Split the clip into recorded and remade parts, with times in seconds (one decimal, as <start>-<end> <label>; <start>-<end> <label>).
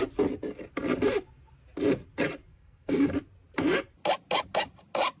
0.0-2.5 recorded; 2.5-3.1 remade; 3.1-5.2 recorded